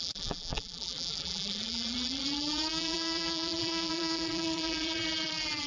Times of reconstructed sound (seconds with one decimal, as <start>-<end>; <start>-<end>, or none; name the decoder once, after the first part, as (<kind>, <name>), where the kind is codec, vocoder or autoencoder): 0.0-5.7 (vocoder, BigVGAN v2)